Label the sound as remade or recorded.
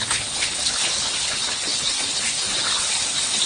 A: remade